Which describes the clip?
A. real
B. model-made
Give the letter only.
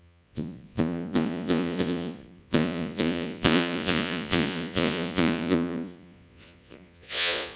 B